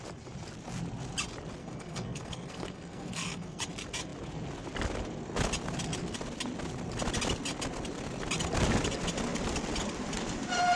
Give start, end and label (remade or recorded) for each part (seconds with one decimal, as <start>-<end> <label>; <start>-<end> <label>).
0.0-1.6 recorded; 1.6-3.6 remade; 3.6-10.8 recorded